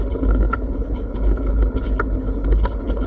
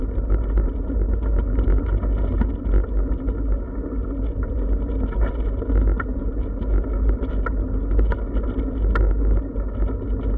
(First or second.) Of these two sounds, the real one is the second